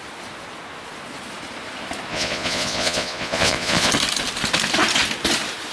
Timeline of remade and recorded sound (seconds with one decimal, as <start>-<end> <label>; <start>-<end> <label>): 0.0-2.1 recorded; 2.1-3.9 remade; 3.9-5.7 recorded